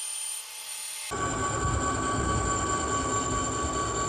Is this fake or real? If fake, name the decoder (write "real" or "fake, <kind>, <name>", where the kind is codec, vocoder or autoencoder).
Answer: real